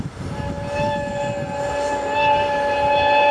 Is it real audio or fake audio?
real